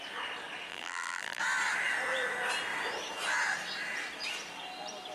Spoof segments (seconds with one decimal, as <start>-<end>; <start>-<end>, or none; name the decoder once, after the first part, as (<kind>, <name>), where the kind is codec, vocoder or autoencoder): 0.7-1.4 (vocoder, BigVGAN v2)